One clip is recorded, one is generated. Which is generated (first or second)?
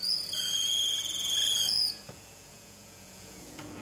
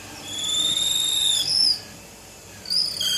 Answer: first